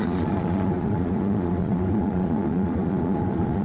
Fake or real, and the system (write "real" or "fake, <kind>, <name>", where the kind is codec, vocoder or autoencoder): fake, vocoder, Vocos